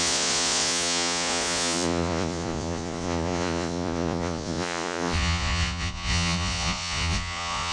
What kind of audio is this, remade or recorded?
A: remade